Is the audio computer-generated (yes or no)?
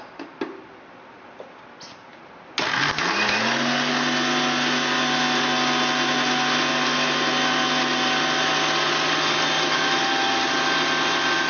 no